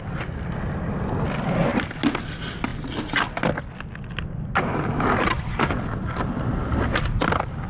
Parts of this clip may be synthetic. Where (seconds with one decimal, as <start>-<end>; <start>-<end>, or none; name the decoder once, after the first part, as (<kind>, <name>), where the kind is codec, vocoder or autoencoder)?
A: none